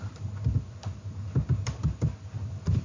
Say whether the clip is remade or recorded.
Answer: recorded